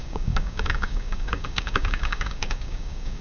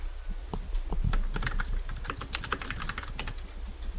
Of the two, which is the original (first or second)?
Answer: second